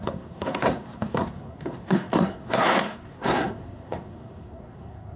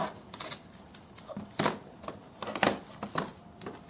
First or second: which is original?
second